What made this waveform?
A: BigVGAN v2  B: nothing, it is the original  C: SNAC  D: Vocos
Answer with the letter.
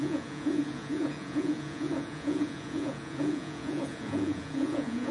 D